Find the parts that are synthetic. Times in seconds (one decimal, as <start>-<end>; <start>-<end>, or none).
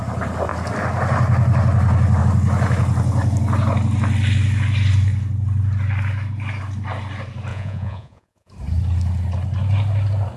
7.5-8.5